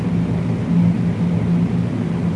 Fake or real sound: real